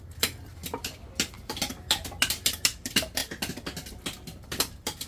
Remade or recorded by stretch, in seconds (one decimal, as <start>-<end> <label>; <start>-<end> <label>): 0.0-5.1 recorded